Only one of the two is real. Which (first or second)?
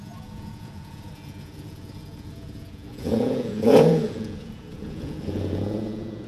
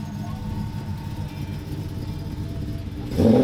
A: second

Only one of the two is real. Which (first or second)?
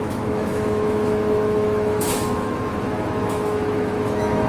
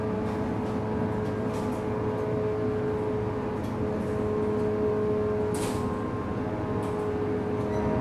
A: second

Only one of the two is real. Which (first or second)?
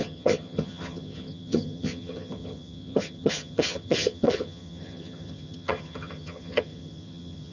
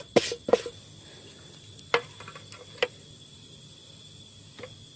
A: second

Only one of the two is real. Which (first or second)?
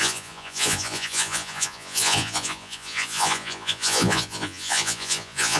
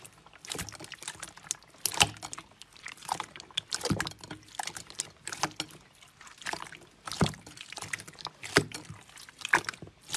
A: second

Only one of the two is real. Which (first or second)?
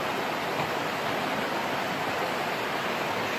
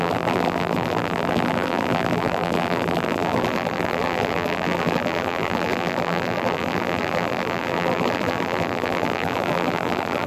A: first